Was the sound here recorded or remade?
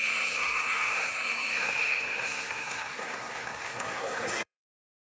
remade